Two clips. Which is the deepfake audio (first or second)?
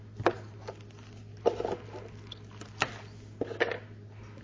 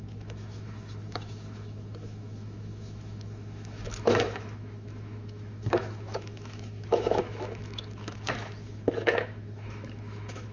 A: second